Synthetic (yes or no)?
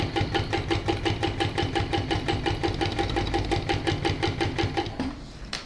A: no